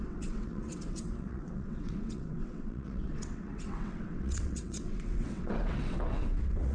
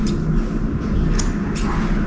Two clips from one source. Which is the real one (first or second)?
second